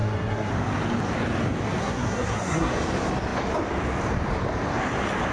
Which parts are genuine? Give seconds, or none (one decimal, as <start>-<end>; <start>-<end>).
0.5-1.8; 2.7-5.3